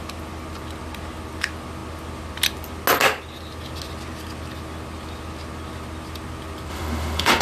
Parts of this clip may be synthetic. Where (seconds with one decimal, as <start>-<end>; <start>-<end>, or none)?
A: 6.7-7.4